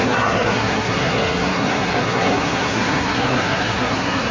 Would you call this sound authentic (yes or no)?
no